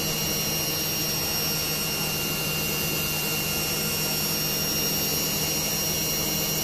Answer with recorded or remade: recorded